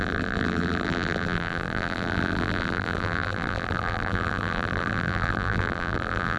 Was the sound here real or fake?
fake